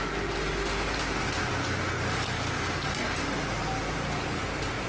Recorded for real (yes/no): yes